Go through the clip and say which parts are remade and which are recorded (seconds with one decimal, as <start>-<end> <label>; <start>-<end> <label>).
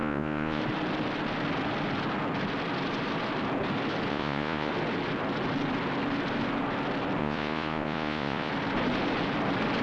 0.0-0.6 remade; 0.6-4.1 recorded; 4.1-4.7 remade; 4.7-7.2 recorded; 7.2-8.5 remade; 8.5-9.8 recorded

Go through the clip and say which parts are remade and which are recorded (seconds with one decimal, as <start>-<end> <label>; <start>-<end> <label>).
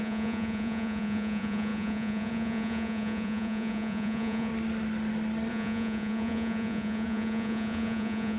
0.0-4.5 remade; 4.5-5.5 recorded; 5.5-8.4 remade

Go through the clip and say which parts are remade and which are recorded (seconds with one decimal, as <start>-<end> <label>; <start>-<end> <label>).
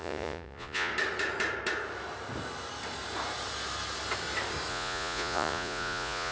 0.0-0.9 remade; 0.9-4.7 recorded; 4.7-6.3 remade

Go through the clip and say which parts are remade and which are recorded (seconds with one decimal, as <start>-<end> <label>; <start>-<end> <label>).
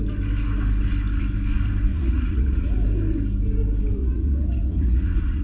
0.0-1.9 recorded; 1.9-2.7 remade; 2.7-4.0 recorded; 4.0-5.4 remade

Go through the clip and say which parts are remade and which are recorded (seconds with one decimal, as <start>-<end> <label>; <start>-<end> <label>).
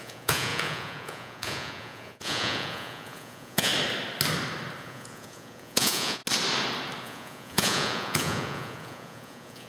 0.0-3.7 remade; 3.7-4.8 recorded; 4.8-6.2 remade; 6.2-7.0 recorded; 7.0-9.7 remade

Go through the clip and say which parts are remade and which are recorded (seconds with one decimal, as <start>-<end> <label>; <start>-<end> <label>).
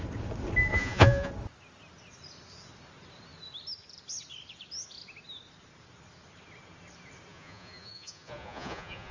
0.0-0.7 recorded; 0.7-1.3 remade; 1.3-7.3 recorded; 7.3-9.1 remade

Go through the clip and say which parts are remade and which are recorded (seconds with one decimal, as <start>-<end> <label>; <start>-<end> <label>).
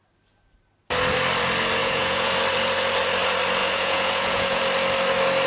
0.0-1.8 recorded; 1.8-2.3 remade; 2.3-3.6 recorded; 3.6-4.6 remade; 4.6-5.5 recorded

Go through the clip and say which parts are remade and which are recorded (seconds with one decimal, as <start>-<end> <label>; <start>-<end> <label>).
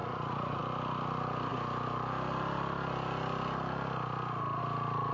0.0-0.6 remade; 0.6-5.1 recorded